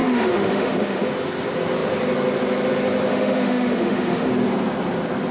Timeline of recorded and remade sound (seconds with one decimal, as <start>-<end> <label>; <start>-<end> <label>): 0.0-1.1 remade; 1.1-3.1 recorded; 3.1-4.3 remade; 4.3-5.3 recorded

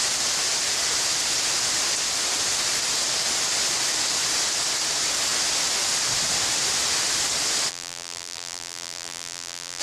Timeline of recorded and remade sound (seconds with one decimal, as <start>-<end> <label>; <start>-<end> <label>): 0.0-7.7 recorded; 7.7-9.8 remade

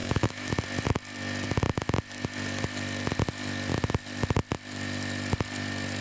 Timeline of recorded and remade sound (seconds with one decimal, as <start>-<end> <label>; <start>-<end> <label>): 0.0-0.5 remade; 0.5-6.0 recorded

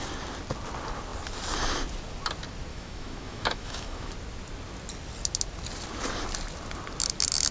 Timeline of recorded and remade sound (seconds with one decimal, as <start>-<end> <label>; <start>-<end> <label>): 0.0-2.7 recorded; 2.7-4.1 remade; 4.1-7.5 recorded

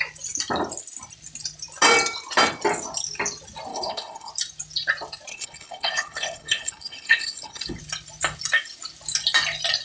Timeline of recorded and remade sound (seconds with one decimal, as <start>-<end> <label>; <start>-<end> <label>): 0.0-3.7 recorded; 3.7-4.3 remade; 4.3-5.3 recorded; 5.3-7.8 remade; 7.8-9.8 recorded

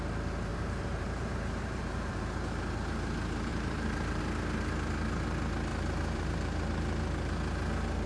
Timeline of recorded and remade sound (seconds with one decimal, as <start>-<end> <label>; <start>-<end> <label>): 0.0-0.5 recorded; 0.5-2.2 remade; 2.2-3.5 recorded; 3.5-4.2 remade; 4.2-5.7 recorded; 5.7-6.3 remade; 6.3-8.1 recorded

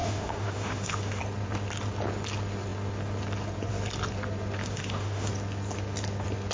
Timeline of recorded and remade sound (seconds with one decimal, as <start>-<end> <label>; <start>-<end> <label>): 0.0-1.2 remade; 1.2-4.6 recorded; 4.6-5.3 remade; 5.3-6.5 recorded

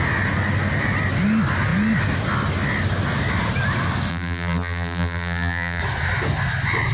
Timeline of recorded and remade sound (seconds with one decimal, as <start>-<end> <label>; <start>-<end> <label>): 0.0-4.1 recorded; 4.1-5.8 remade; 5.8-6.9 recorded